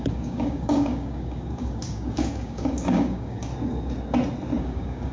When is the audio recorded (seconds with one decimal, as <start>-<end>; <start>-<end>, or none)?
3.5-4.6